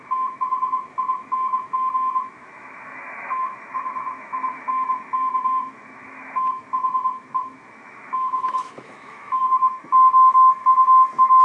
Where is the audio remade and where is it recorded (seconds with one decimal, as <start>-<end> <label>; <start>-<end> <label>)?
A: 0.0-11.4 remade